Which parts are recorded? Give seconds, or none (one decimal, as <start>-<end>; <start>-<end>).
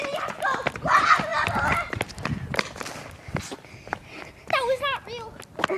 0.0-5.8